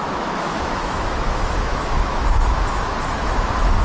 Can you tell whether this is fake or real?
fake